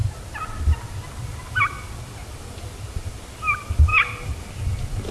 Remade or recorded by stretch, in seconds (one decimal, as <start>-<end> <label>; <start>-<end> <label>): 0.0-0.9 recorded; 0.9-5.1 remade